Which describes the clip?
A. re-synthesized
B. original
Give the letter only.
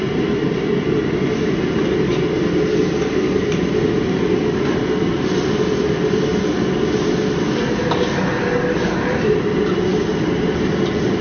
B